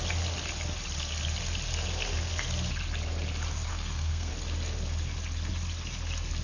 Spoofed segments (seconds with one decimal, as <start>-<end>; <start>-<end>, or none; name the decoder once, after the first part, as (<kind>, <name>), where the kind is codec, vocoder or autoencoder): 3.7-4.3 (codec, SNAC)